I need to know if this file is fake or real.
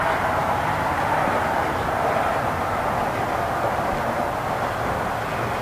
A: real